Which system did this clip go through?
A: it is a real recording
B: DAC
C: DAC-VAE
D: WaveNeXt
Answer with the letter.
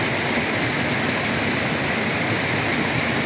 A